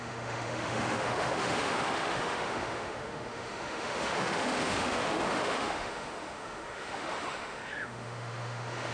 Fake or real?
fake